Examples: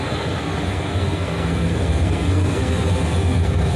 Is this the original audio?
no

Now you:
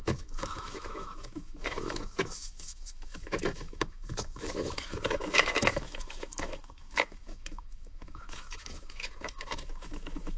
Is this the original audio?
no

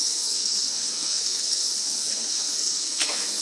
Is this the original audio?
no